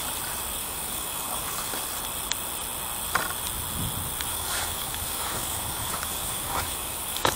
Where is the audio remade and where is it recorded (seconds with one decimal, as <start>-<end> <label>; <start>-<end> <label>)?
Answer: 0.0-0.6 recorded; 0.6-1.7 remade; 1.7-4.3 recorded; 4.3-7.4 remade